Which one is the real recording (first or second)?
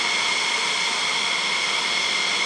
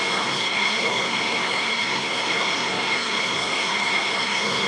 first